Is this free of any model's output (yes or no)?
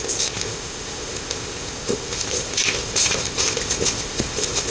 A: no